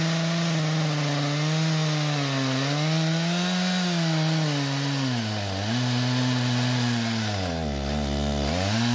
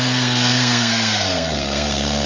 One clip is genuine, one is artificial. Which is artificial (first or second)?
second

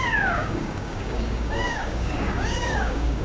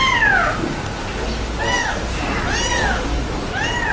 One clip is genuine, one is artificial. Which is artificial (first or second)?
first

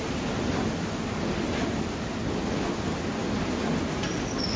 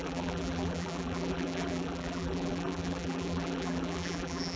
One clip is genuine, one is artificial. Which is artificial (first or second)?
second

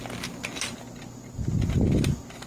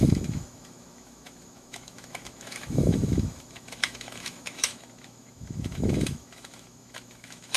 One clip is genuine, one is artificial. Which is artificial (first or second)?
second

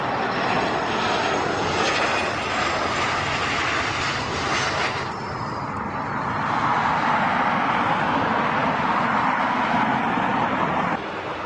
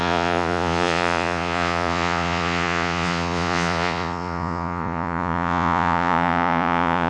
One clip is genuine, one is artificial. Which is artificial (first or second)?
second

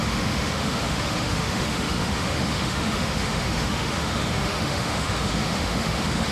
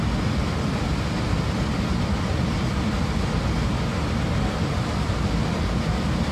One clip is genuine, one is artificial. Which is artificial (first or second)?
first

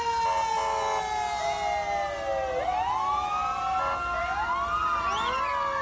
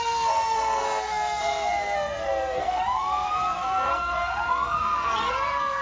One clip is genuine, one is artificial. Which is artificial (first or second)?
second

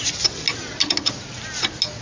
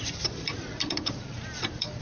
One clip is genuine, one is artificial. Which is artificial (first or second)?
second